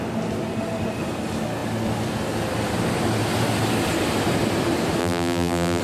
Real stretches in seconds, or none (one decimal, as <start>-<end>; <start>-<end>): 0.0-5.0